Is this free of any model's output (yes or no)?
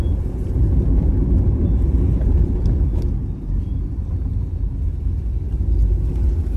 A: yes